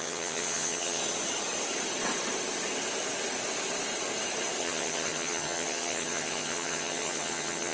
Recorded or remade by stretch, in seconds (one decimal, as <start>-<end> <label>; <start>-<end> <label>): 0.0-1.0 remade; 1.0-4.6 recorded; 4.6-7.7 remade